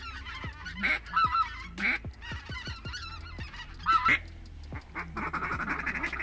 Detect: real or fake real